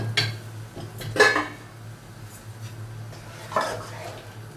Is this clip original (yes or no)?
yes